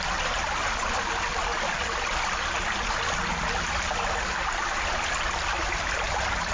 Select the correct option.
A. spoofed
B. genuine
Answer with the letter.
B